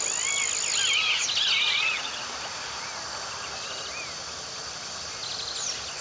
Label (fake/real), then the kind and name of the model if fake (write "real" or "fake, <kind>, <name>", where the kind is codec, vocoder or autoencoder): real